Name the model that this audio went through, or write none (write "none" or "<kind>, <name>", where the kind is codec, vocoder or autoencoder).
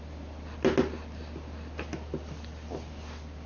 none